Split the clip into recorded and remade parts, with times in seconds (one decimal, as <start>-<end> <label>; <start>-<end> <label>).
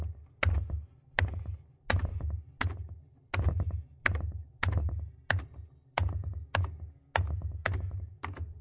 0.0-8.6 recorded